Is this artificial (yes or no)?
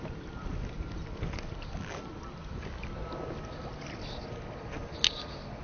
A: no